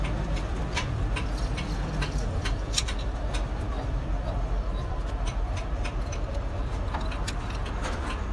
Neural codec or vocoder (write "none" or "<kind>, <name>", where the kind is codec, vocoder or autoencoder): vocoder, BigVGAN v2